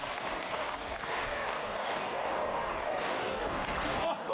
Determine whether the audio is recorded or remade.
remade